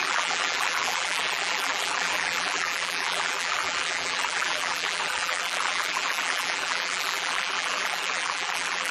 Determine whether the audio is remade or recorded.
remade